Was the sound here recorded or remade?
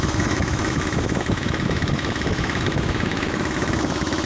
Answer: remade